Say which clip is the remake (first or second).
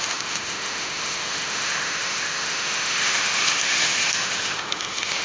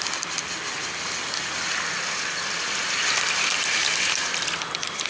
first